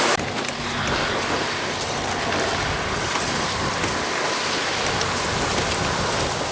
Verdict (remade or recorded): recorded